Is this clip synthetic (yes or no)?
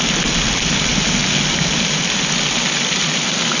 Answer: no